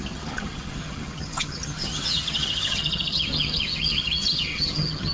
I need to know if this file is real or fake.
fake